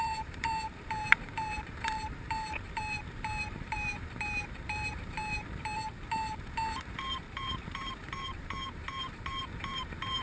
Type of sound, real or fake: fake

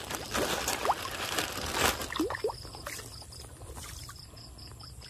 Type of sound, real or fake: real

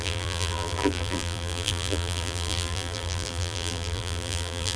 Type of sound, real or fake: fake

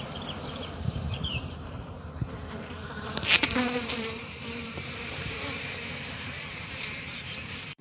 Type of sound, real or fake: fake